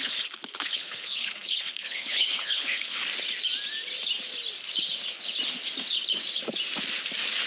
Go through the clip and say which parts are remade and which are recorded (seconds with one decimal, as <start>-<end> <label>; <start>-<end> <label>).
0.0-3.0 remade; 3.0-7.5 recorded